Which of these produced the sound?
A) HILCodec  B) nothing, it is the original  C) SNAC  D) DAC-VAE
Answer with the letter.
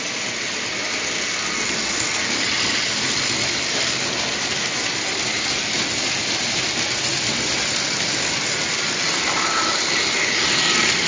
B